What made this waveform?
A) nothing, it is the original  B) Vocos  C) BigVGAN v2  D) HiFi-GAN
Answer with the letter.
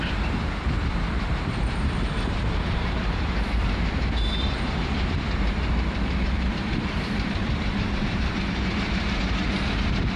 C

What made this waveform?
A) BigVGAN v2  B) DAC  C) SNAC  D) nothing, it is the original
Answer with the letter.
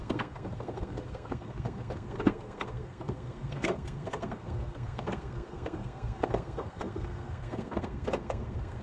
C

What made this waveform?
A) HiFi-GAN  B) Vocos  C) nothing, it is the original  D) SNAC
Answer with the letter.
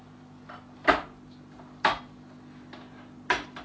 C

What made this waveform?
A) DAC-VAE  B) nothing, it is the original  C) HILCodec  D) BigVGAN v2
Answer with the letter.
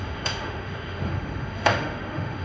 A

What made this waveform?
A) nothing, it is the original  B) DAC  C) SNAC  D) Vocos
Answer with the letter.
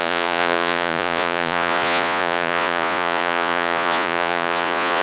D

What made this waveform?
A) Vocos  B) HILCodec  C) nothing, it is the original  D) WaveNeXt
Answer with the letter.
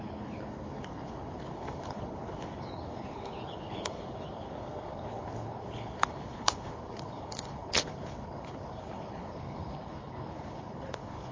B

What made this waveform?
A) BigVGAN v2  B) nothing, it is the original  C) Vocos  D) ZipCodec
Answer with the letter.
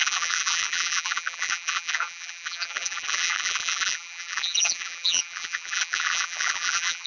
A